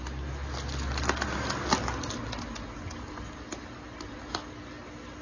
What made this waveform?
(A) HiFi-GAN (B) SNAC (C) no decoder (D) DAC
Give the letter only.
C